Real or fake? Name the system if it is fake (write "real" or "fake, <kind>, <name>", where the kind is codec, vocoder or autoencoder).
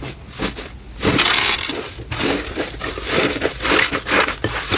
real